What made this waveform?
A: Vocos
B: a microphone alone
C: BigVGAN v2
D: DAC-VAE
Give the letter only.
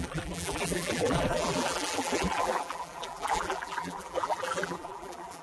C